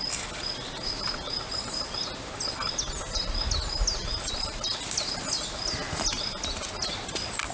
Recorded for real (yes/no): yes